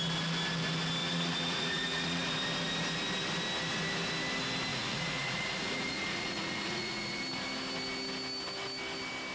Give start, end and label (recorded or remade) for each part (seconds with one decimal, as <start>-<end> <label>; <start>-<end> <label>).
0.0-1.0 recorded; 1.0-2.3 remade; 2.3-4.7 recorded; 4.7-7.2 remade; 7.2-9.3 recorded